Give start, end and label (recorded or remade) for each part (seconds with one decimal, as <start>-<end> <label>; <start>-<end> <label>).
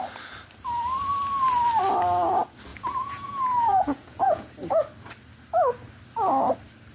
0.0-2.7 recorded; 2.7-4.5 remade; 4.5-6.9 recorded